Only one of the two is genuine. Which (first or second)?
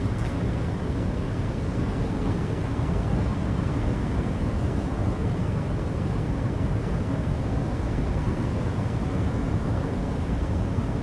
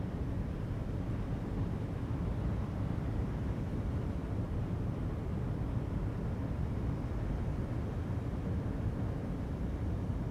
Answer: second